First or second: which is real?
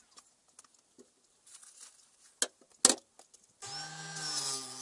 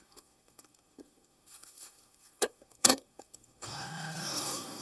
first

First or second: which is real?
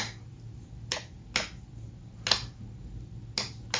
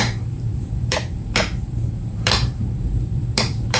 first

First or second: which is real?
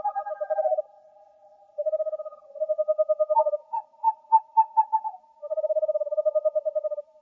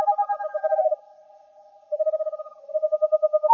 second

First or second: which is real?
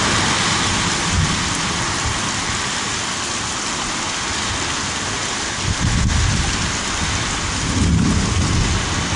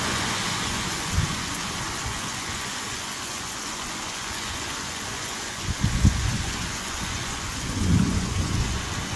first